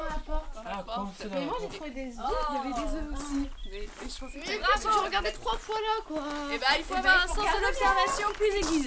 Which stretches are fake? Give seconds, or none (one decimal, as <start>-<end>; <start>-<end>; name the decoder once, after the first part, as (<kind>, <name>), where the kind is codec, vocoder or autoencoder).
none

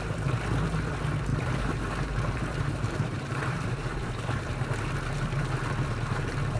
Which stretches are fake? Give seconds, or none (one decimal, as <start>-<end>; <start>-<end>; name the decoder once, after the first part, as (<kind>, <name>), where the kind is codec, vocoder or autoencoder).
1.3-4.6 (vocoder, BigVGAN v2)

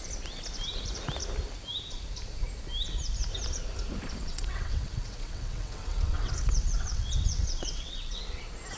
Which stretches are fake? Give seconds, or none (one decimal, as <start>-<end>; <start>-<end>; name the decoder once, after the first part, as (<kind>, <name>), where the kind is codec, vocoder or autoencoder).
4.3-8.4 (vocoder, WaveNeXt)

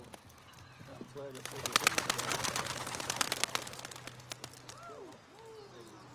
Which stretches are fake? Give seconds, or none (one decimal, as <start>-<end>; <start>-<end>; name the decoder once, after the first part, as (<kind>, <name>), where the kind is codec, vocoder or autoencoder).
none

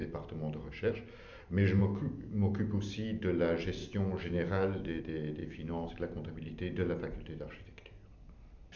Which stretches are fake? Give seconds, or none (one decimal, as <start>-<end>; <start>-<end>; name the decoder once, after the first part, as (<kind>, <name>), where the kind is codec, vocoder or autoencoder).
1.8-2.5 (autoencoder, DAC-VAE); 3.8-5.0; 5.4-5.9

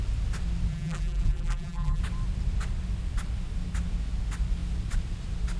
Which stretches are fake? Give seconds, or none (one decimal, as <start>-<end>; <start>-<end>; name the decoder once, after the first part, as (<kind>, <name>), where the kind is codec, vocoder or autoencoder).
0.7-2.0 (vocoder, BigVGAN v2)